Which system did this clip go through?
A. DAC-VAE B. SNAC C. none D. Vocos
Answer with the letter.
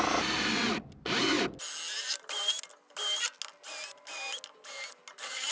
C